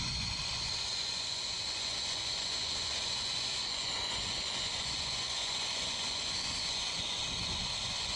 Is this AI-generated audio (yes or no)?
yes